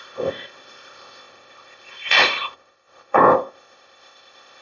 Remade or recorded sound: remade